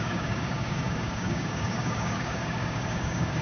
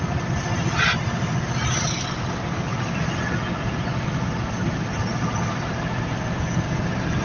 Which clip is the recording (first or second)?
second